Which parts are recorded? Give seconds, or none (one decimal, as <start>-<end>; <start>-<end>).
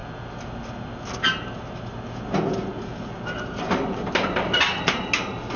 0.0-5.6